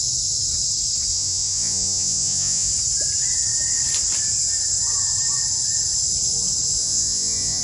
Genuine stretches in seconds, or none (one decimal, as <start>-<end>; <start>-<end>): 0.0-1.1; 2.7-6.8